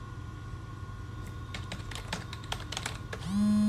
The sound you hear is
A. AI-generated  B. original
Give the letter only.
B